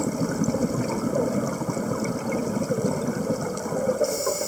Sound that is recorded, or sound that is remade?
recorded